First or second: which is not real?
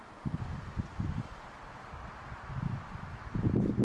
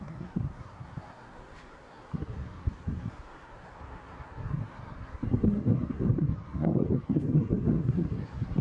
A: second